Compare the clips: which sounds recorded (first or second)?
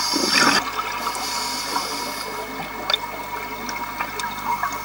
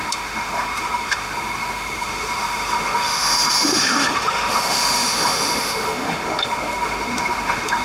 first